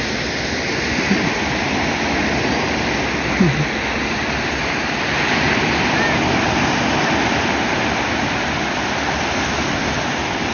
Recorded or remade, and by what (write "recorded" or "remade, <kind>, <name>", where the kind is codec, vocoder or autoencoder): recorded